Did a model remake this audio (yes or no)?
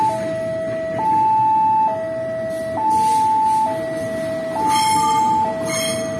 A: no